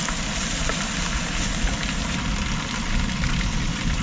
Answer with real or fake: real